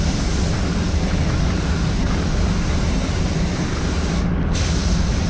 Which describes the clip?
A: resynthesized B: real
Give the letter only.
B